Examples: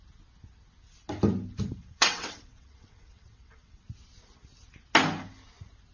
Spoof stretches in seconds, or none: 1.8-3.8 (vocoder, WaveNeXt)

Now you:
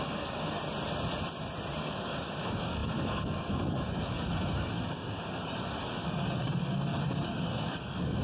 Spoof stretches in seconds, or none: 0.0-0.6 (codec, DAC); 1.8-8.2

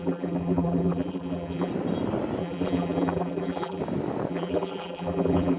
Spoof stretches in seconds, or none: 0.0-1.7 (vocoder, BigVGAN v2); 2.4-3.8; 4.3-5.6